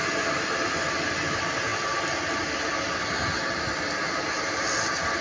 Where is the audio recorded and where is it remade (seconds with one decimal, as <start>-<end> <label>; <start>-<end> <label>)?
0.0-5.2 recorded